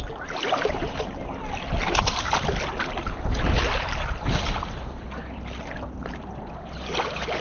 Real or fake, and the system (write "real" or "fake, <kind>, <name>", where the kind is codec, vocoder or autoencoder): real